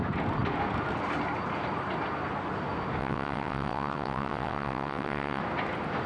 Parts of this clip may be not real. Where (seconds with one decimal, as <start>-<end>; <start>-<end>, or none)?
3.0-5.4